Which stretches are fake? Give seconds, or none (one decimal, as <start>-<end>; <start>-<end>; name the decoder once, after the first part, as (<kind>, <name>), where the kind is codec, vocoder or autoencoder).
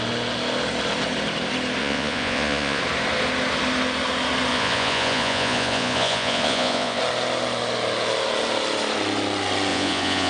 1.8-2.8 (vocoder, Vocos); 4.5-7.0; 9.7-10.3